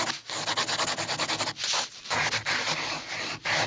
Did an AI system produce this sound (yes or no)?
no